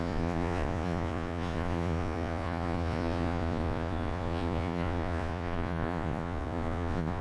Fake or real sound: fake